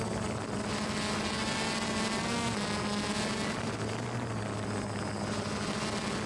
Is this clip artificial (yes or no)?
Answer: no